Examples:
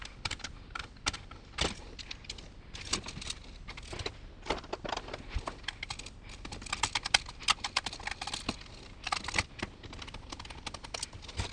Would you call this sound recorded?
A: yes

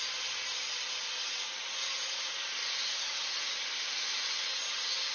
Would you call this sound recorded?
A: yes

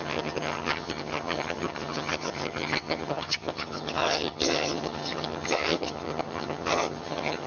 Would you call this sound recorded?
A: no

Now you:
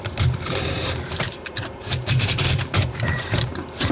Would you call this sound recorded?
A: no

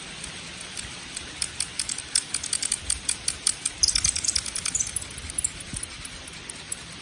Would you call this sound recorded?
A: no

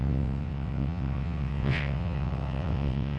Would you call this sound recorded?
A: no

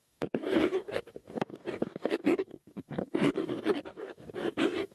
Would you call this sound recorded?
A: no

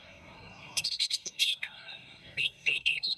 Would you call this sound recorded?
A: no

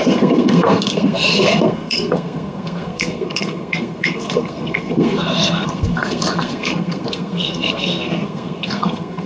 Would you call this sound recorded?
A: no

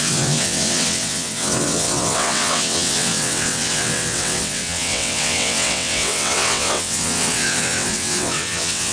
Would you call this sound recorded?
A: no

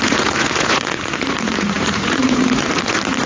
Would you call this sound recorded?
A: no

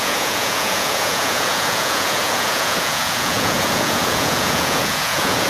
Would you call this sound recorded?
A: no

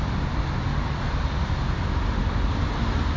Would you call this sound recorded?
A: yes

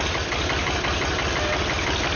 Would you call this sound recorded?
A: yes